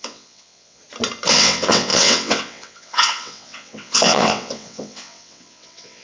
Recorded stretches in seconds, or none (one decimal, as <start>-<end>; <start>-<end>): 0.8-1.3